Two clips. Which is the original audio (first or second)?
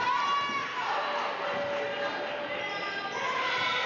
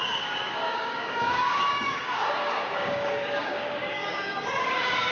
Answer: first